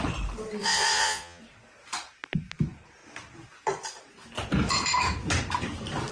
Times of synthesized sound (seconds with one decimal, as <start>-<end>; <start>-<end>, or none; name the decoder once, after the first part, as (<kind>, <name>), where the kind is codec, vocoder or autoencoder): 0.6-1.4 (vocoder, Vocos)